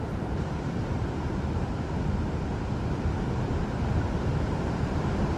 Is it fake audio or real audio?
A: fake